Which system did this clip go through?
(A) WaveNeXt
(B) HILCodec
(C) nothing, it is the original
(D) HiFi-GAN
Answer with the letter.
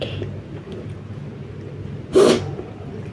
C